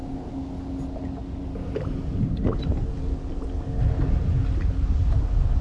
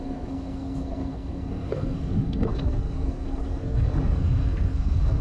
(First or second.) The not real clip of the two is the second